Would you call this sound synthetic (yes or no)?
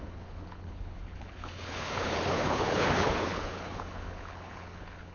yes